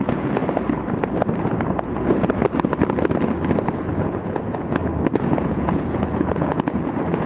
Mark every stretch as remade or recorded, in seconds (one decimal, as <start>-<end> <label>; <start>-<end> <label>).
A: 0.0-0.4 remade; 0.4-3.7 recorded; 3.7-4.8 remade; 4.8-5.4 recorded; 5.4-7.3 remade